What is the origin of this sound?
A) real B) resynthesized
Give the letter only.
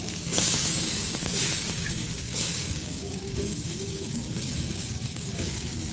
B